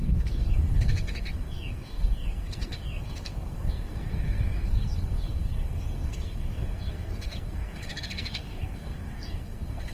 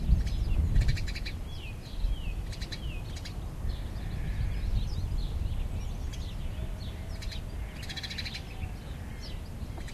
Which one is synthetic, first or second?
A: first